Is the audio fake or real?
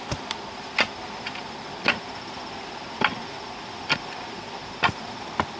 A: real